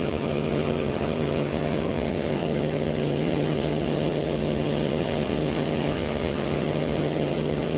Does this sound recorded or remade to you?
remade